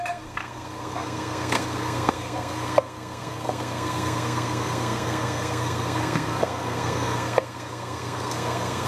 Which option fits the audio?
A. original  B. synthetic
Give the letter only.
B